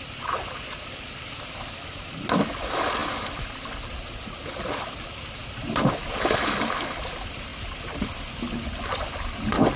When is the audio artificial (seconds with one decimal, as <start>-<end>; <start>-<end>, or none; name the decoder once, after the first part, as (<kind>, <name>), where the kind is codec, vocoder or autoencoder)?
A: 5.4-6.8 (vocoder, BigVGAN v2)